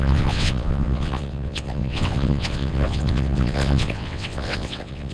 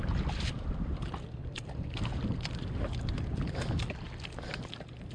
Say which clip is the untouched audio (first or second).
second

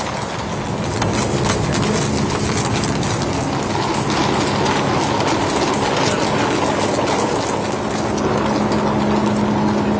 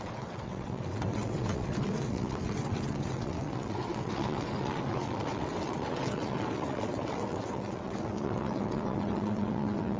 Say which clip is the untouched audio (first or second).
first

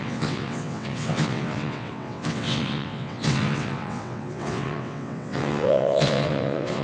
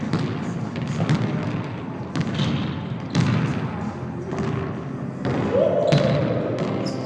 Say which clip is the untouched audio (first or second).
second